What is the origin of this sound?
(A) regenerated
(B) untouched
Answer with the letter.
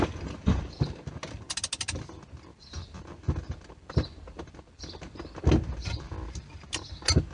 B